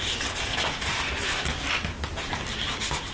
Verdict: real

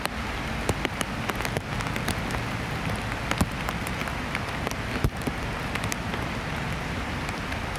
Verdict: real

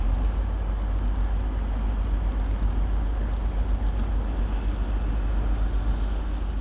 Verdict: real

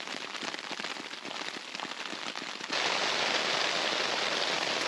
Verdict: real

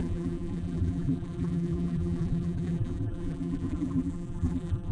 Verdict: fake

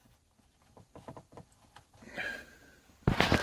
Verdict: real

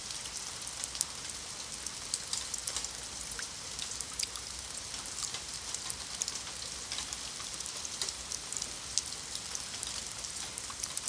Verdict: real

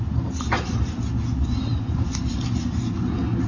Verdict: real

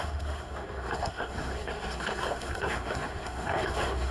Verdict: fake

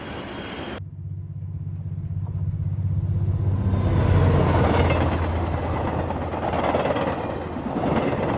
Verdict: real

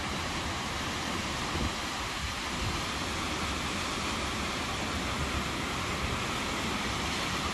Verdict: real